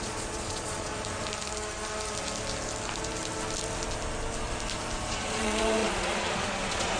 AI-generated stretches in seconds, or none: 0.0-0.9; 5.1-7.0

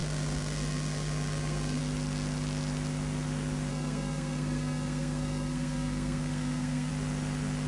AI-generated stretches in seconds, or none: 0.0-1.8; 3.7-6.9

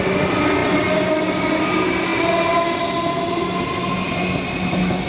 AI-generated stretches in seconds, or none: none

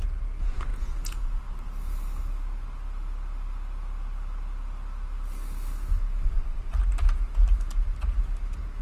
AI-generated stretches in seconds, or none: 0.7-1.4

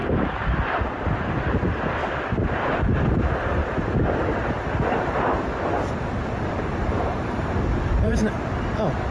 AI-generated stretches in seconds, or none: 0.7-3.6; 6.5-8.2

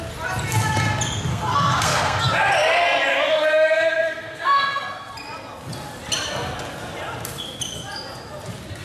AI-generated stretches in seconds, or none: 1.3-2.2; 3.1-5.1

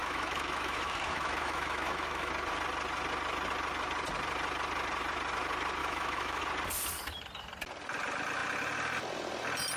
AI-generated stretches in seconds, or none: 0.0-2.3; 5.8-6.4

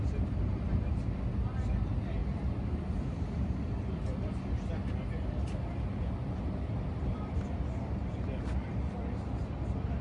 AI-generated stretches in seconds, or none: 2.2-4.7